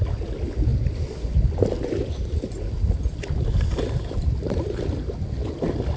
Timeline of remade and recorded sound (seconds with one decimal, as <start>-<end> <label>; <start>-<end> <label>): 0.0-0.7 recorded; 0.7-4.3 remade; 4.3-6.0 recorded